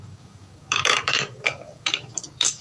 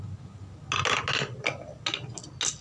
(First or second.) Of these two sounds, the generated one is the first